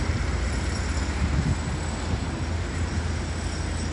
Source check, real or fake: real